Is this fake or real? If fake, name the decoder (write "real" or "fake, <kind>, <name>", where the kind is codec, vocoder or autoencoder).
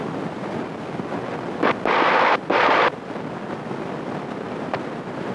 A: real